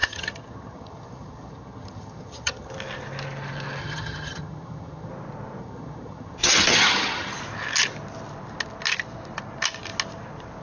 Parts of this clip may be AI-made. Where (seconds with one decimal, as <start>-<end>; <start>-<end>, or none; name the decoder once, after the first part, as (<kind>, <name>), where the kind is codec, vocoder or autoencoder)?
0.0-2.7 (vocoder, HiFi-GAN); 3.8-5.1; 5.6-7.4